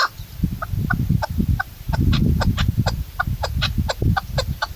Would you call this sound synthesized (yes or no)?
no